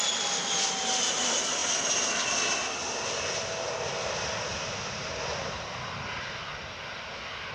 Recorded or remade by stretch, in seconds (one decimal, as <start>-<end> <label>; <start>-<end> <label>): 0.0-7.5 recorded